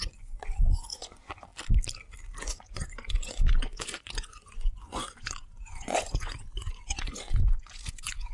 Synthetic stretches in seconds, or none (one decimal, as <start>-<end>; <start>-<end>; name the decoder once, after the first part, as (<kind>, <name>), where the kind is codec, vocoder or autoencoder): 0.0-1.5 (vocoder, Vocos); 2.4-8.3